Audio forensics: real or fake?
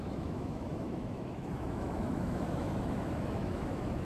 fake